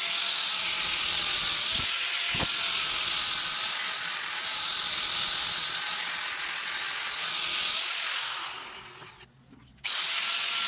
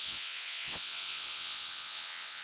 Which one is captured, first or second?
first